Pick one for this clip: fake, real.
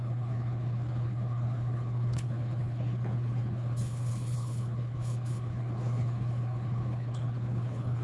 fake